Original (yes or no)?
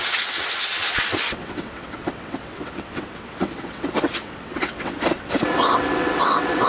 no